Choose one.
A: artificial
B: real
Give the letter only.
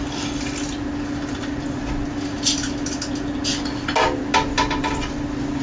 B